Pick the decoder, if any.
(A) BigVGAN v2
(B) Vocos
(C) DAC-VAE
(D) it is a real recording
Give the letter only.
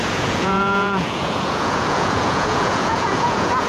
B